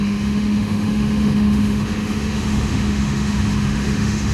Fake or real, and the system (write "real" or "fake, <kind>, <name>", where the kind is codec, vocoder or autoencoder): fake, autoencoder, DAC-VAE